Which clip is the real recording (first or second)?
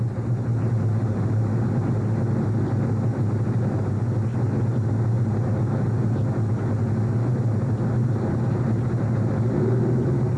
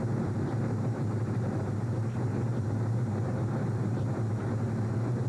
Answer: first